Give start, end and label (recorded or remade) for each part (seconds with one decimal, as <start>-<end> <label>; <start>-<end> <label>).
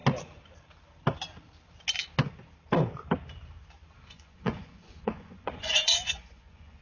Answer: 0.0-4.1 recorded; 4.1-6.8 remade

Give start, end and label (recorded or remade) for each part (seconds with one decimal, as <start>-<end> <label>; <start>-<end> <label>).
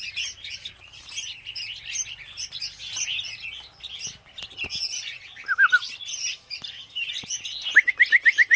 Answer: 0.0-8.6 recorded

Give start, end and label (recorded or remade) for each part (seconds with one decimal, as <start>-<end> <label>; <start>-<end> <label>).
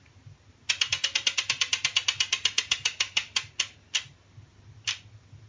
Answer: 0.0-5.5 recorded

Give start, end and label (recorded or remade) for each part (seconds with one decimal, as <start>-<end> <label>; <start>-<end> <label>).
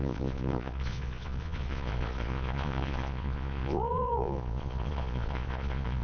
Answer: 0.0-6.0 remade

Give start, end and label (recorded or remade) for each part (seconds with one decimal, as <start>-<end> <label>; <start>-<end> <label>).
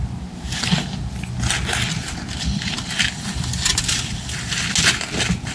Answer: 0.0-5.5 recorded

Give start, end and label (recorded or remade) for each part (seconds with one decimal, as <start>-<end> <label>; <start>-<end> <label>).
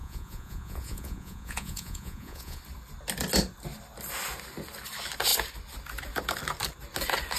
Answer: 0.0-2.6 remade; 2.6-7.4 recorded